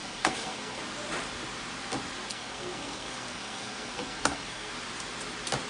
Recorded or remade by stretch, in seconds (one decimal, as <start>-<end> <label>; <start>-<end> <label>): 0.0-0.8 remade; 0.8-2.3 recorded; 2.3-4.7 remade; 4.7-5.7 recorded